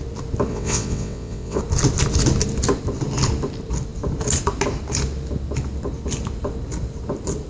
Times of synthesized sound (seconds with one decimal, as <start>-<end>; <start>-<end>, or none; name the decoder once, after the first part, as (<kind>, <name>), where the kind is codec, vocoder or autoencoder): 0.5-1.6 (vocoder, WaveNeXt)